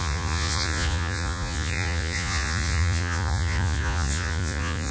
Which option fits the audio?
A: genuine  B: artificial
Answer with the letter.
B